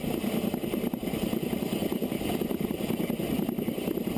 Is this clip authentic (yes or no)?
yes